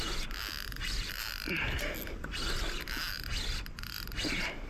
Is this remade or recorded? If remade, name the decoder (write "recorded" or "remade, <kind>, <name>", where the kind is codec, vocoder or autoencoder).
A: recorded